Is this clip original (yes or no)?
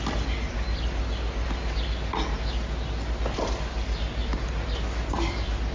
yes